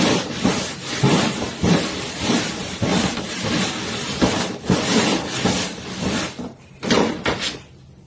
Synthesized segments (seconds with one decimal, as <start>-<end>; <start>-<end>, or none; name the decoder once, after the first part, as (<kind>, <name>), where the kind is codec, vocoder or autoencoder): none

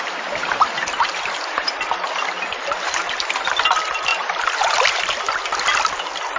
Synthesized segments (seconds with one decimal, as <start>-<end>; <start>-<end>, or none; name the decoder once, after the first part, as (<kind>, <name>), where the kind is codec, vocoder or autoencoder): 4.1-4.7 (vocoder, BigVGAN v2); 5.5-6.4

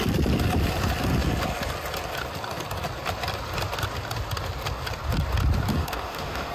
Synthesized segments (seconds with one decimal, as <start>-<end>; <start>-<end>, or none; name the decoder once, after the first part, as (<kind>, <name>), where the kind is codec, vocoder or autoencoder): 5.7-6.5 (autoencoder, DAC-VAE)

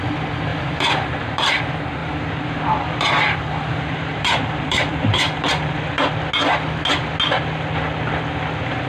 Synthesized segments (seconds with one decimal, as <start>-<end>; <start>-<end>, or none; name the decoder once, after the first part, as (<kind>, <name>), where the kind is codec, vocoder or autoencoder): 0.5-1.6 (vocoder, BigVGAN v2); 2.0-6.1

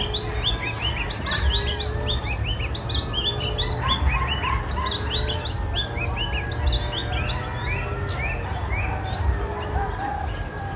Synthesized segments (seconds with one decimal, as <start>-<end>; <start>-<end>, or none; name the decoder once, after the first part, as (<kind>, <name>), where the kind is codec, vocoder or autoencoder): none

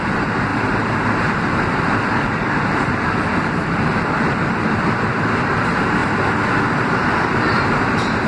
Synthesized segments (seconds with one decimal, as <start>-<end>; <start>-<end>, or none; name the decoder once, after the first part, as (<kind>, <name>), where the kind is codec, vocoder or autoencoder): 0.0-6.0 (vocoder, BigVGAN v2); 7.2-8.3

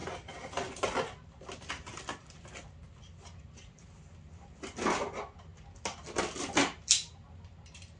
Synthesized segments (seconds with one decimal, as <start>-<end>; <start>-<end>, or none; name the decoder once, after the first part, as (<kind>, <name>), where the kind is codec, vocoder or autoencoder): none

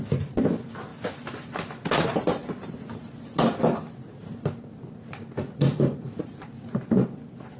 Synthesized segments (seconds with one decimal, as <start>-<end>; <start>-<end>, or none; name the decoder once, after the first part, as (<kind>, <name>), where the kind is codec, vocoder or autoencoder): none